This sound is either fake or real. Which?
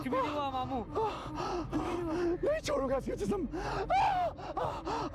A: real